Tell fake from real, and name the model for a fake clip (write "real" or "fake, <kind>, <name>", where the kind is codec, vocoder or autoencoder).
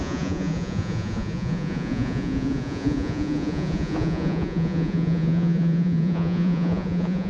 fake, vocoder, Vocos